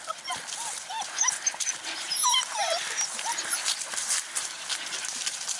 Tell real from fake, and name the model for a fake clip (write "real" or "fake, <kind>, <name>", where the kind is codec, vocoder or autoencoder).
fake, vocoder, BigVGAN v2